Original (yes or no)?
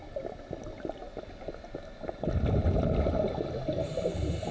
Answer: yes